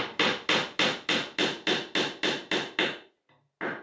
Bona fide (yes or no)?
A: yes